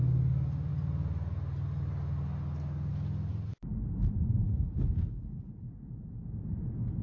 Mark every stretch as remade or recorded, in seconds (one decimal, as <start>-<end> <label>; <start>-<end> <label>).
0.0-3.3 recorded; 3.3-6.4 remade; 6.4-7.0 recorded